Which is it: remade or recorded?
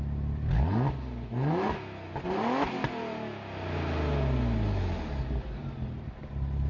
recorded